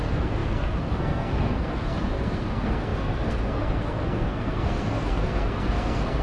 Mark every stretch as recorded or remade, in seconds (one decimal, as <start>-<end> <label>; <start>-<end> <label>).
0.0-6.2 remade